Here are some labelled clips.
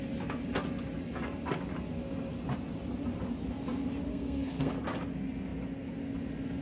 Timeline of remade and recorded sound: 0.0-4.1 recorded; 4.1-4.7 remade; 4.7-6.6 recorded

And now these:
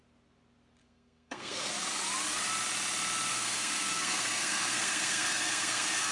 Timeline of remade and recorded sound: 0.0-0.8 recorded; 0.8-1.7 remade; 1.7-3.3 recorded; 3.3-6.1 remade

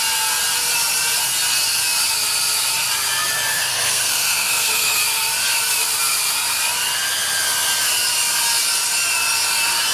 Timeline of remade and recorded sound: 0.0-3.5 recorded; 3.5-5.0 remade; 5.0-9.9 recorded

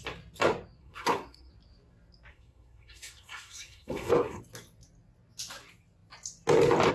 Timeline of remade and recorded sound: 0.0-0.8 recorded; 0.8-1.5 remade; 1.5-2.3 recorded; 2.3-4.4 remade; 4.4-6.9 recorded

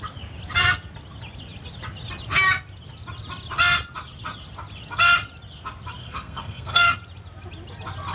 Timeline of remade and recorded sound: 0.0-6.0 recorded; 6.0-6.9 remade; 6.9-8.1 recorded

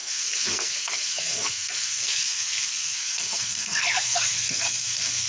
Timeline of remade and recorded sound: 0.0-5.3 remade